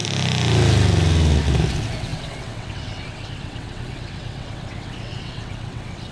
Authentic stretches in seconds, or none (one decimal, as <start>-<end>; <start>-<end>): 0.0-1.7

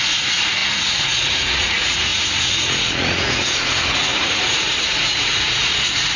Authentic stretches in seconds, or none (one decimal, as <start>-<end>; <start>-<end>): none

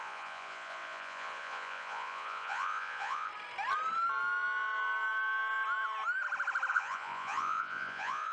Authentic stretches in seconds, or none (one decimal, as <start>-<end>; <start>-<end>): 3.3-6.7

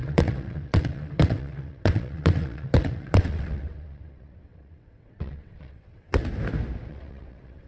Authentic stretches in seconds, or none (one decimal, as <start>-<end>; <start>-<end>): 6.2-6.9